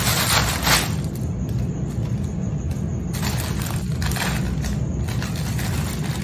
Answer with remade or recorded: recorded